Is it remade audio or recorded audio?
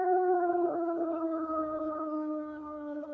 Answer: remade